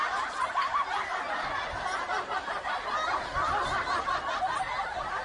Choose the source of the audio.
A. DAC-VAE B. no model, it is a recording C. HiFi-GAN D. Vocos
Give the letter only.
B